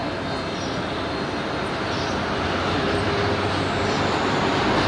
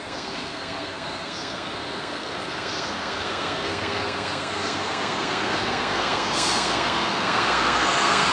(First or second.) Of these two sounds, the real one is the first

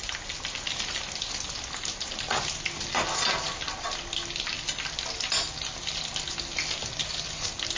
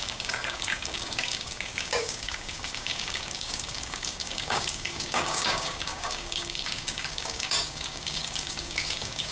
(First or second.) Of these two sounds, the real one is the first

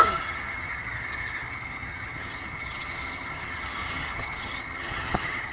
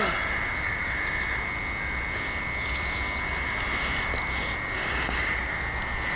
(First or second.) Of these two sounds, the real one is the second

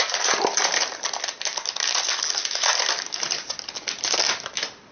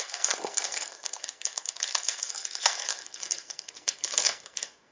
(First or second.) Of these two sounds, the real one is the first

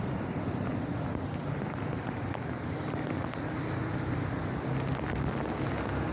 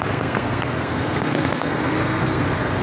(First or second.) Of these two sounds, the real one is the first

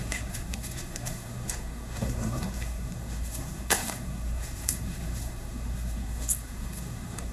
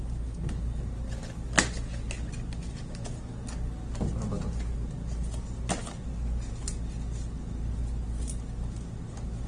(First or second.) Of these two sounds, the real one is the second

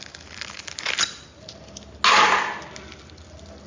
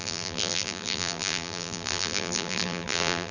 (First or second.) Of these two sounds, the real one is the first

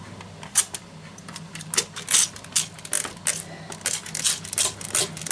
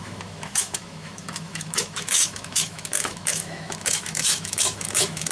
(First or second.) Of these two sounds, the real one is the first